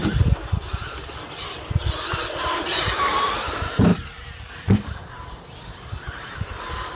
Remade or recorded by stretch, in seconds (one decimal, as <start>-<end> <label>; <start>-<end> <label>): 0.0-3.9 recorded; 3.9-4.5 remade; 4.5-5.0 recorded; 5.0-6.5 remade; 6.5-6.9 recorded